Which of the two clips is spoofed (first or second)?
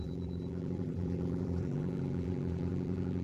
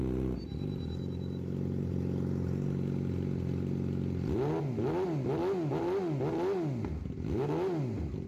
first